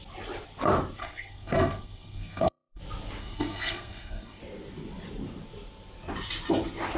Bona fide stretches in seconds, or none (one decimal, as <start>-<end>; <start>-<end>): 0.0-1.0; 2.8-3.2; 4.4-7.0